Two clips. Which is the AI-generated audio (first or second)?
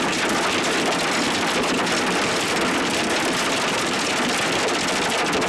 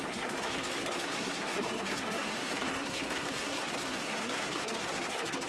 second